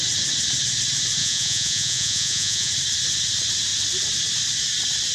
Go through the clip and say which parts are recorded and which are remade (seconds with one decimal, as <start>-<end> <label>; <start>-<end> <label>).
0.0-1.2 recorded; 1.2-2.7 remade; 2.7-5.1 recorded

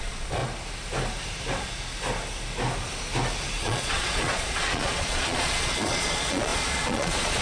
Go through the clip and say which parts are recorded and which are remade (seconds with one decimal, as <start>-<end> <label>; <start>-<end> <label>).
0.0-0.4 remade; 0.4-3.6 recorded; 3.6-7.4 remade